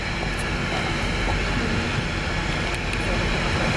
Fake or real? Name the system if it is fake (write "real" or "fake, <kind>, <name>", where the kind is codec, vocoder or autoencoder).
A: real